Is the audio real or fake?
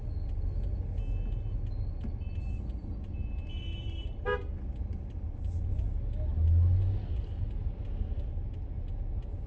real